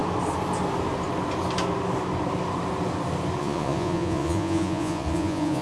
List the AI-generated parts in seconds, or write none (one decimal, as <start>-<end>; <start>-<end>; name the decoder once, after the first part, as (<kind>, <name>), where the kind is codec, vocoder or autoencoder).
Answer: 3.4-5.6 (vocoder, Vocos)